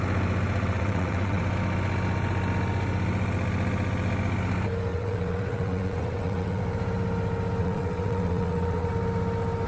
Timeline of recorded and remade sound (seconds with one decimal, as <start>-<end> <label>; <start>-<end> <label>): 0.0-0.6 recorded; 0.6-1.4 remade; 1.4-4.9 recorded; 4.9-6.6 remade; 6.6-7.6 recorded; 7.6-8.9 remade; 8.9-9.7 recorded